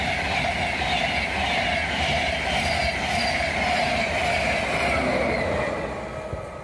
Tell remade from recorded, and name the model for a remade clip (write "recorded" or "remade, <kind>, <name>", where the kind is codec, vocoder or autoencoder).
recorded